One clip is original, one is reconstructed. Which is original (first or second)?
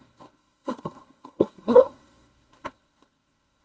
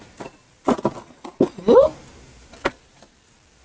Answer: second